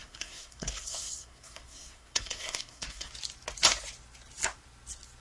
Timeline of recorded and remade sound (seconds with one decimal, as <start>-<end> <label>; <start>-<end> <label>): 0.0-3.1 remade; 3.1-5.2 recorded